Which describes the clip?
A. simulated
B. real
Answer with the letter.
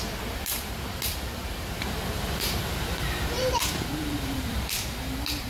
A